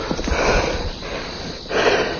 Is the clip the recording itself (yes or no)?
yes